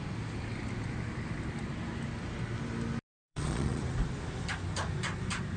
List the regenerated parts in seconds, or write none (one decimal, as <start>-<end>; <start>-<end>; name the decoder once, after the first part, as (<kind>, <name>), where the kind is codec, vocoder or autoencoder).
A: 3.2-3.8 (vocoder, Vocos)